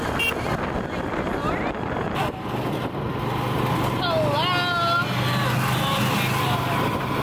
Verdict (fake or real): real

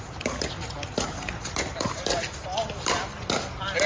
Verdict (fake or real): real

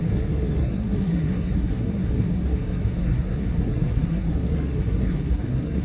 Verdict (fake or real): fake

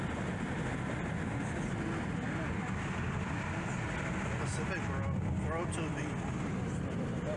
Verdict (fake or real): real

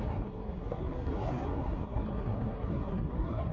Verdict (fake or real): fake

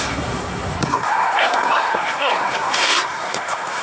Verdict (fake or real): fake